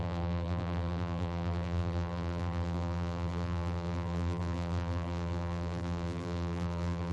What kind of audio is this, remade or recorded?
remade